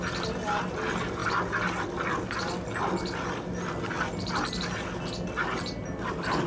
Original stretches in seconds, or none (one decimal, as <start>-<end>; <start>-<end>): 0.0-6.5